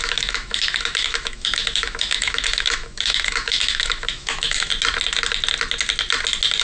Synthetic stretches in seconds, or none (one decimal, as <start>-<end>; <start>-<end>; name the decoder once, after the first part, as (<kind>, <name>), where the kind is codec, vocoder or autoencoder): 0.0-4.7 (autoencoder, DAC-VAE)